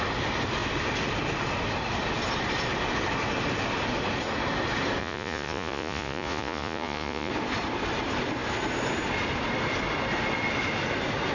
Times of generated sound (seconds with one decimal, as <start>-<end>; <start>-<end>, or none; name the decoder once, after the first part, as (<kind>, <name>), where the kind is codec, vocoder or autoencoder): 5.0-7.3 (vocoder, Vocos)